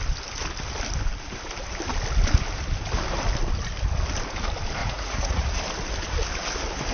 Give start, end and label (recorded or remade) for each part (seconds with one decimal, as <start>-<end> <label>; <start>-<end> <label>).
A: 0.0-4.8 recorded; 4.8-5.6 remade; 5.6-6.9 recorded